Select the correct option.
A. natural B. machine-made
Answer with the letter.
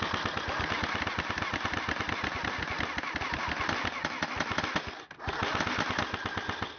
A